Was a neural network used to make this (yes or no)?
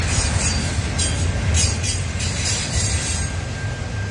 no